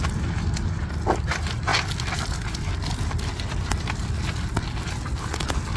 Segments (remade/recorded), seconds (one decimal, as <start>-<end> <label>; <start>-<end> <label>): 0.0-5.8 recorded